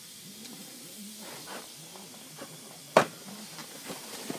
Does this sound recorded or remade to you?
recorded